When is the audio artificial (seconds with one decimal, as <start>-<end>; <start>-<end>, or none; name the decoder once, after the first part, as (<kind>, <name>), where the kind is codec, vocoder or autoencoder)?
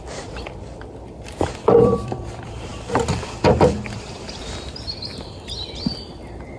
0.0-6.6 (vocoder, BigVGAN v2)